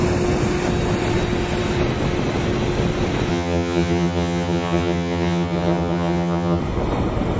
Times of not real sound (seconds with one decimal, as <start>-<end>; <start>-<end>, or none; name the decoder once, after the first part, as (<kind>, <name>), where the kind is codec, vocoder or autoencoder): 3.3-6.6 (vocoder, HiFi-GAN)